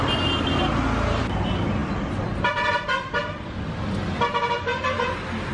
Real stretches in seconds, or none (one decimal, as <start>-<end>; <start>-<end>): 0.0-5.5